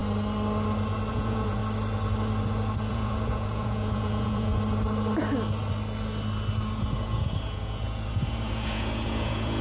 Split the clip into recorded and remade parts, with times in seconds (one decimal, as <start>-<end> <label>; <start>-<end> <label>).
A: 0.0-1.1 recorded; 1.1-1.6 remade; 1.6-2.9 recorded; 2.9-4.5 remade; 4.5-6.8 recorded; 6.8-9.6 remade